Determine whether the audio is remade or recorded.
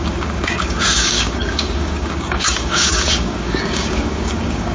remade